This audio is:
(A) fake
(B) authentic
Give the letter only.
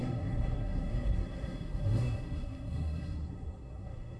A